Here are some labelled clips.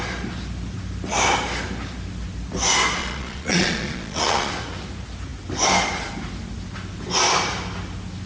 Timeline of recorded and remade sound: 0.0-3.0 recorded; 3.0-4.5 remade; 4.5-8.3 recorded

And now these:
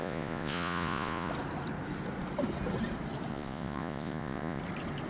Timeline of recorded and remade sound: 0.0-1.3 remade; 1.3-3.3 recorded; 3.3-4.6 remade; 4.6-5.1 recorded

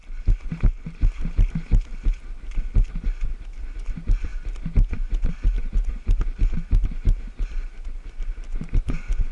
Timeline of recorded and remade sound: 0.0-8.5 recorded; 8.5-9.3 remade

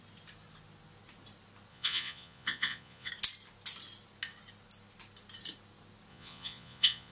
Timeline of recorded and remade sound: 0.0-1.7 recorded; 1.7-3.1 remade; 3.1-6.1 recorded; 6.1-7.1 remade

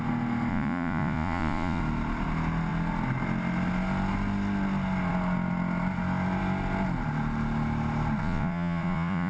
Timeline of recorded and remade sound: 0.0-0.5 recorded; 0.5-1.8 remade; 1.8-8.2 recorded; 8.2-9.3 remade

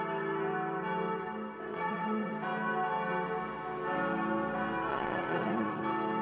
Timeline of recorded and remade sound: 0.0-1.7 recorded; 1.7-2.3 remade; 2.3-4.9 recorded; 4.9-5.8 remade; 5.8-6.2 recorded

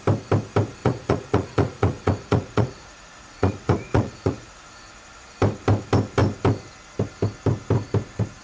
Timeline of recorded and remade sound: 0.0-0.8 recorded; 0.8-4.7 remade; 4.7-8.4 recorded

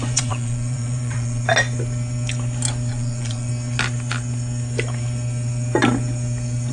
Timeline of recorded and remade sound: 0.0-1.5 remade; 1.5-2.9 recorded; 2.9-3.5 remade; 3.5-6.7 recorded